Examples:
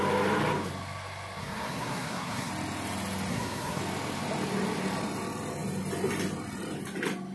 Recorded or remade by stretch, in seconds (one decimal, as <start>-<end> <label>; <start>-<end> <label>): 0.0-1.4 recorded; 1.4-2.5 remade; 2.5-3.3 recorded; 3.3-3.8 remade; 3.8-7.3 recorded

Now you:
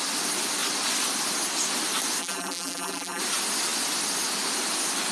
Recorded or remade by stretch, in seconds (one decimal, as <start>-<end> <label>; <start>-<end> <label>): 0.0-2.2 recorded; 2.2-3.2 remade; 3.2-5.1 recorded

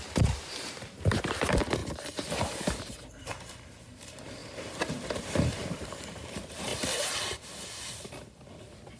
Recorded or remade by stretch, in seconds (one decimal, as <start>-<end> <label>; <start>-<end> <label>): 0.0-1.8 remade; 1.8-2.8 recorded; 2.8-6.7 remade; 6.7-9.0 recorded

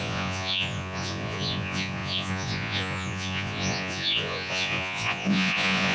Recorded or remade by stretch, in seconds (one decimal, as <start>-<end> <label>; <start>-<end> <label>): 0.0-5.9 remade